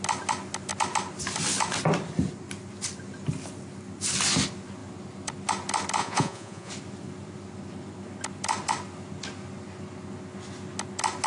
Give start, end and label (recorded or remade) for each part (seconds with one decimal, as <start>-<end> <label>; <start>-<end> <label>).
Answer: 0.0-6.0 recorded; 6.0-6.7 remade; 6.7-11.3 recorded